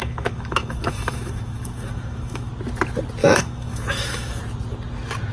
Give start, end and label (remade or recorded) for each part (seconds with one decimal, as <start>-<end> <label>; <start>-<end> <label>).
0.0-2.5 remade; 2.5-3.2 recorded; 3.2-4.4 remade; 4.4-5.3 recorded